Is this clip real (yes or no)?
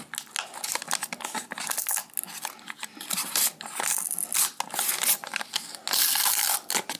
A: yes